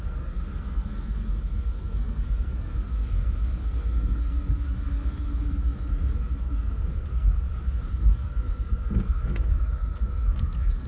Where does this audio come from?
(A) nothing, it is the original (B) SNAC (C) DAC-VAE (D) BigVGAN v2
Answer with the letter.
B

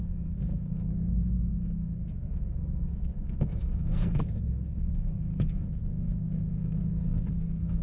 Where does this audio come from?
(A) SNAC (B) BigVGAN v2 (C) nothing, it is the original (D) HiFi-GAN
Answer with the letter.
A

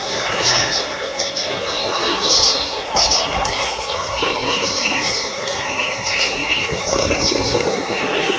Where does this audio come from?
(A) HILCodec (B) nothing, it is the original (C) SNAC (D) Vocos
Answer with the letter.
C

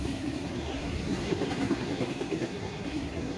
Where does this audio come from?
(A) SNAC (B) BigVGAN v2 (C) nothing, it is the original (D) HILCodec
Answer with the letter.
A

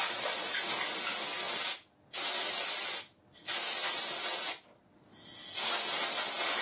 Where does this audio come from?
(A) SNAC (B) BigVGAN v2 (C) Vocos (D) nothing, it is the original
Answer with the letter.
D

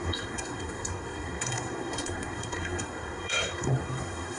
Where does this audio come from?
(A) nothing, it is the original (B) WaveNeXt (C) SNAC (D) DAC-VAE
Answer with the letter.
C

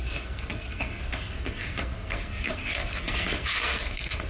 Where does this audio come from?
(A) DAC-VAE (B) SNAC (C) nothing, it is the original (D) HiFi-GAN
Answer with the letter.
B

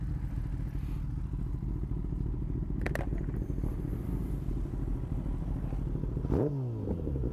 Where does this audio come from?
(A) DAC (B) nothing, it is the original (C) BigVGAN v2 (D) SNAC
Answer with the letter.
B